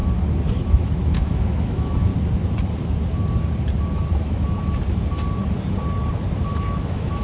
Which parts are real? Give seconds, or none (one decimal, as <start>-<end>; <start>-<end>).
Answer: 0.0-0.5; 2.1-4.1; 4.6-6.5